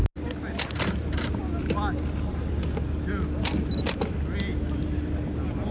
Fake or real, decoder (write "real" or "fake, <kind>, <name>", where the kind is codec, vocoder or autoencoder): real